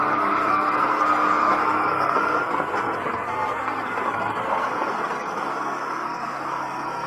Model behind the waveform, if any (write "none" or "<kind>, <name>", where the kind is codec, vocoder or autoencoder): codec, SNAC